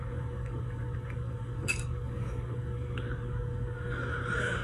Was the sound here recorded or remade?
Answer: remade